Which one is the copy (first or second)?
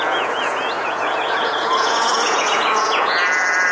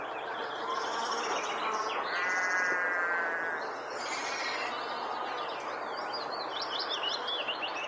first